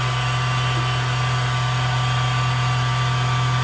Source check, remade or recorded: recorded